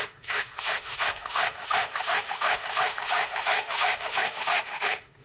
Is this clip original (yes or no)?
no